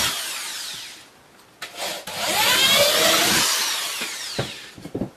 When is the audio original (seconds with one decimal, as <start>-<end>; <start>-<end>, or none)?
0.7-3.8

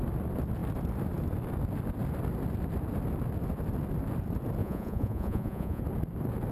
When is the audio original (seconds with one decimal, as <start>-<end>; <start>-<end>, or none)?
0.0-4.6; 5.8-6.5

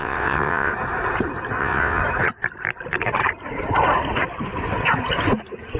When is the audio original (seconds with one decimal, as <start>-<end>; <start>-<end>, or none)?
0.7-1.6; 2.0-5.8

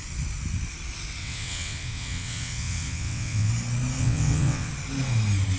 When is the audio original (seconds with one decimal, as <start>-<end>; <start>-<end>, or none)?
0.0-1.2; 3.5-4.0; 4.7-5.6

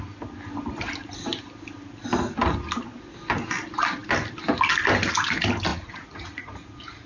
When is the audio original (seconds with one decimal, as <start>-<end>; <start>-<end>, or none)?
0.0-5.7

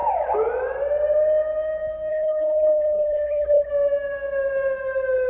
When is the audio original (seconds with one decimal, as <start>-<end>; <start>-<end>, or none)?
0.0-2.1; 3.7-5.3

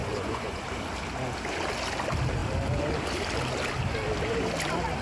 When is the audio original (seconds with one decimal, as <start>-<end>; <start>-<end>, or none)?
0.6-5.0

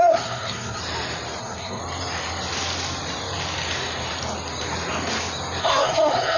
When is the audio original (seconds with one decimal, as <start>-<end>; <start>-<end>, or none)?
0.8-1.4; 1.8-5.6